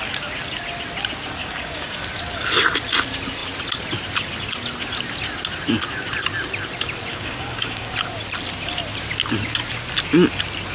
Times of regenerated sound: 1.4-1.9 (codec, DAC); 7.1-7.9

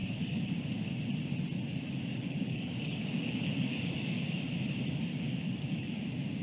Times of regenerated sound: 0.0-0.6 (codec, DAC); 2.1-4.4; 5.1-6.0

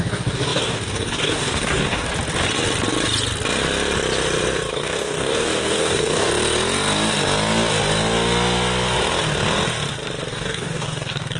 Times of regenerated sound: 0.0-2.1 (codec, DAC); 4.7-6.3; 10.3-11.4

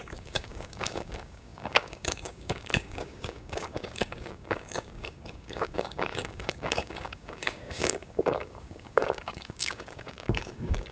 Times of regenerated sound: 0.0-10.9 (codec, DAC)